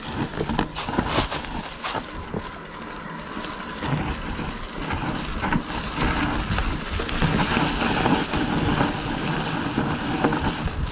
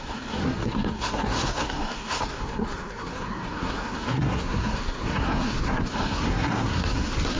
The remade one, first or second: second